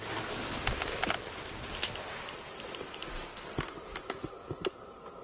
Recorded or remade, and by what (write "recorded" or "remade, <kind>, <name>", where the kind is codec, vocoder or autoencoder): recorded